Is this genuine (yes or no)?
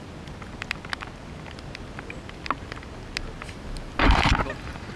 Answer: yes